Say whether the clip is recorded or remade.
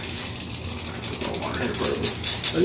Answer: recorded